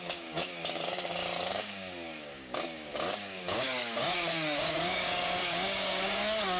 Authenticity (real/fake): fake